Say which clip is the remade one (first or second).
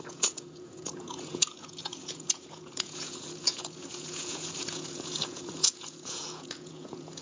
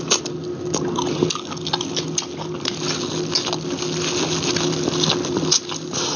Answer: first